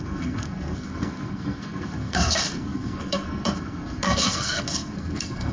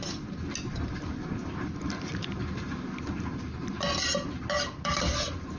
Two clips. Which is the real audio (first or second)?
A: second